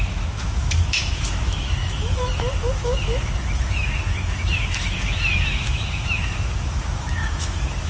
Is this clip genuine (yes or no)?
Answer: no